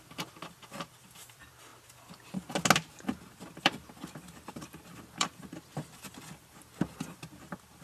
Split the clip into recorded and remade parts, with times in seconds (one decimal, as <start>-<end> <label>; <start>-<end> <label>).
0.0-1.7 remade; 1.7-3.6 recorded; 3.6-7.8 remade